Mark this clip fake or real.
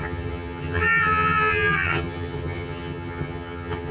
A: fake